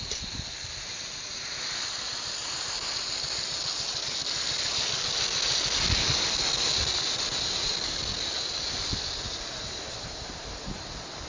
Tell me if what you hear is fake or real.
real